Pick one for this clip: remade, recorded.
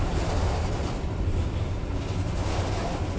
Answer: recorded